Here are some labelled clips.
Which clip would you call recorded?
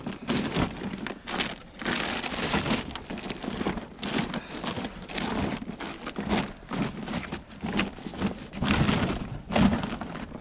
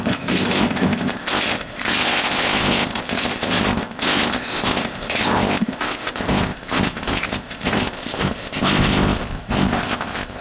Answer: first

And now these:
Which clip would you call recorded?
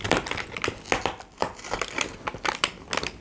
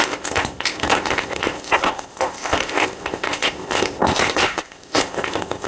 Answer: first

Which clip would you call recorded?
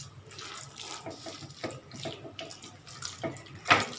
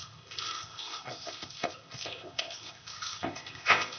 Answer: first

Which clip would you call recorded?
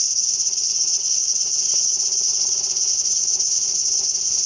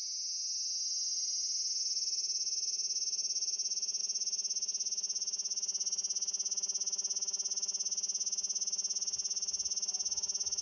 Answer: second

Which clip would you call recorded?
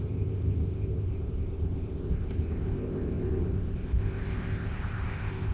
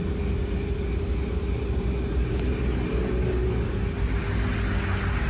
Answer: second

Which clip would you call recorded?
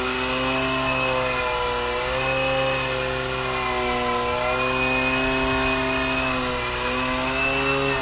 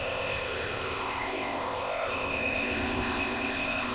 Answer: first